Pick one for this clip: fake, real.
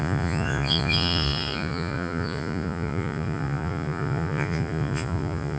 fake